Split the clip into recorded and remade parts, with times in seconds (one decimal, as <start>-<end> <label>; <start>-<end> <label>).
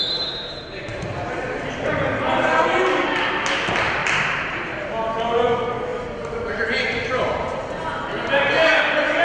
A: 0.0-0.9 recorded; 0.9-1.8 remade; 1.8-4.0 recorded; 4.0-4.9 remade; 4.9-5.9 recorded; 5.9-7.2 remade; 7.2-9.2 recorded